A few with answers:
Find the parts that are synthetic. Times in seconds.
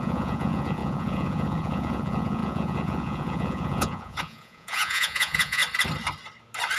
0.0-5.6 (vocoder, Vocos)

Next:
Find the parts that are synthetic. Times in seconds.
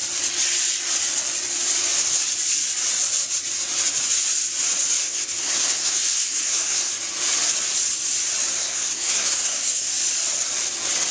5.0-6.9 (codec, SNAC); 8.5-9.9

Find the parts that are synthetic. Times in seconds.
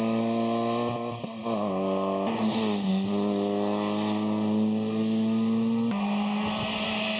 none